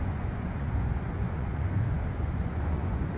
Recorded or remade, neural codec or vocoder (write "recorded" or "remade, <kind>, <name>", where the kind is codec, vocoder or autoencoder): remade, vocoder, Vocos